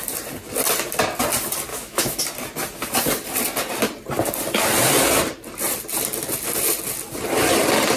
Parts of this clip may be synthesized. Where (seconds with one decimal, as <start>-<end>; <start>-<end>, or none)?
1.7-2.2